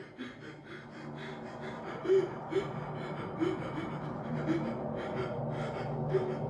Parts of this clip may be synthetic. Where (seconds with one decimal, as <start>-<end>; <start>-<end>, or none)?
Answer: 2.0-5.4